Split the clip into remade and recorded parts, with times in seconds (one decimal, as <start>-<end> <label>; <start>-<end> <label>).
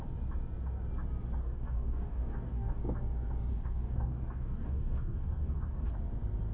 0.0-1.4 recorded; 1.4-2.8 remade; 2.8-3.5 recorded; 3.5-5.9 remade; 5.9-6.5 recorded